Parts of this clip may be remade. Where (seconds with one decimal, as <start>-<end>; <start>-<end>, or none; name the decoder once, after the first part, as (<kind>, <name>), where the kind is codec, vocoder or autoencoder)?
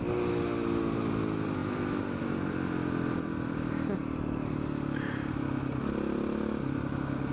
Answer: none